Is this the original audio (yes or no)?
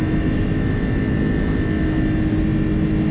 yes